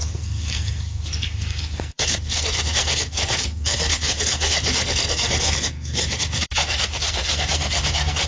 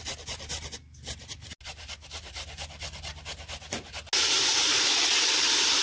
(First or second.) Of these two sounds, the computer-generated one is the first